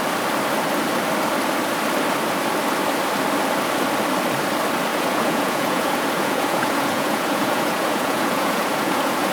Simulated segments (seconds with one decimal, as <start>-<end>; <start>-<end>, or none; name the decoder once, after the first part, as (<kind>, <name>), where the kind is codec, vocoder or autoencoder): 4.9-9.3 (vocoder, Vocos)